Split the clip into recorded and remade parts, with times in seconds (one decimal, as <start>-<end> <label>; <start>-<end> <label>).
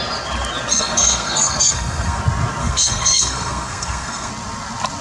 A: 0.0-0.7 recorded; 0.7-2.2 remade; 2.2-2.6 recorded; 2.6-4.3 remade; 4.3-5.0 recorded